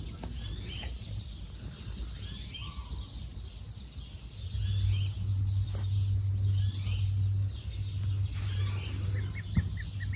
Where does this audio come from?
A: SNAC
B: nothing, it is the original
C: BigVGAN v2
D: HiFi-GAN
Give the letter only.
B